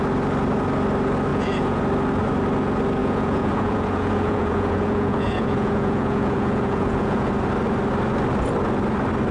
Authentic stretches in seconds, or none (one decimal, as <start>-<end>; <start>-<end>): 0.0-1.3; 1.8-3.0; 7.3-9.3